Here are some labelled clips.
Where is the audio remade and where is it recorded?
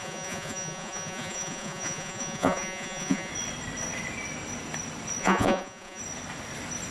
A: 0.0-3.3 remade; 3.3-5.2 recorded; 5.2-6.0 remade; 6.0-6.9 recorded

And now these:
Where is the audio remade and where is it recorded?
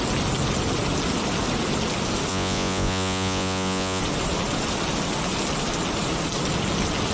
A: 0.0-2.3 recorded; 2.3-4.0 remade; 4.0-7.1 recorded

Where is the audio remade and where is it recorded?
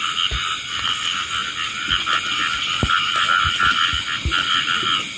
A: 0.0-5.2 recorded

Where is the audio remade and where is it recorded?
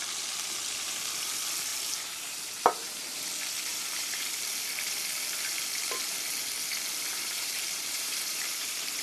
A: 0.0-1.7 recorded; 1.7-3.3 remade; 3.3-3.7 recorded; 3.7-4.5 remade; 4.5-7.1 recorded; 7.1-9.0 remade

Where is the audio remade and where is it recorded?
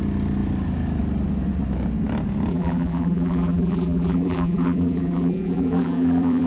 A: 0.0-2.5 recorded; 2.5-6.5 remade